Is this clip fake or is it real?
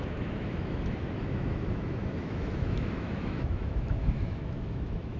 fake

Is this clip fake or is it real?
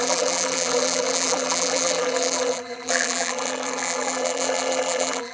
fake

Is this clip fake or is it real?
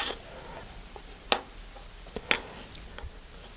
real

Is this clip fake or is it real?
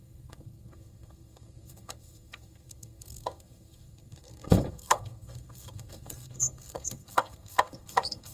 fake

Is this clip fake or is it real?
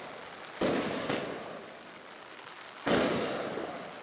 real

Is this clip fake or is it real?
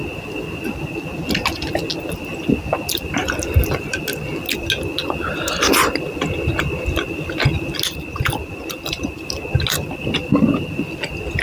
real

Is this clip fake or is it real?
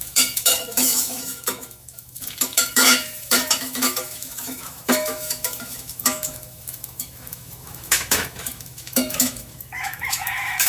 fake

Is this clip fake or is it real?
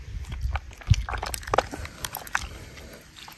real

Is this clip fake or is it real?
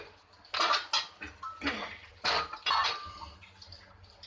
real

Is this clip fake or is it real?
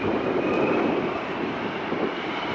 fake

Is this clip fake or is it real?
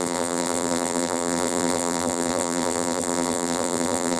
fake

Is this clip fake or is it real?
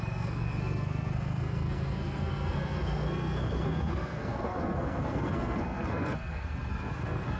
fake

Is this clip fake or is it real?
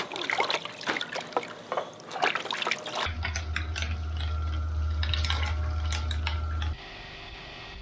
real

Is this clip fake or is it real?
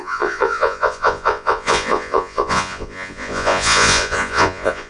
fake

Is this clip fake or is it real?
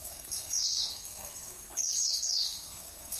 fake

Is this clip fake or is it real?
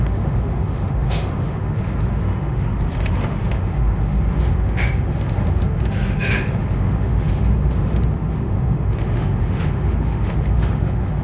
fake